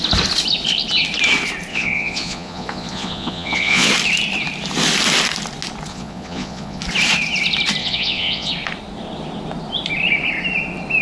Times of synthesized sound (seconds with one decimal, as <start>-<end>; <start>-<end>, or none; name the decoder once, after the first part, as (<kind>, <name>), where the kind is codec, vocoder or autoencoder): 1.7-3.9 (vocoder, Vocos); 5.9-6.8; 7.8-8.5